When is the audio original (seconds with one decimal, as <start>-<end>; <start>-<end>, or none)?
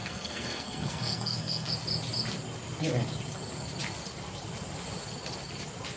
1.7-6.0